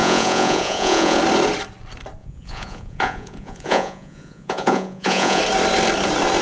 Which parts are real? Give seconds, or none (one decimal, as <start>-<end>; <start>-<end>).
1.2-2.2; 5.4-6.4